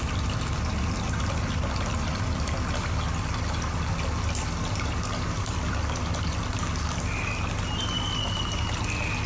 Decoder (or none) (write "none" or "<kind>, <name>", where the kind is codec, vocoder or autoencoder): none